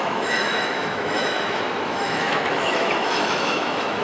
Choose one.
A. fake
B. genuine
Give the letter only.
A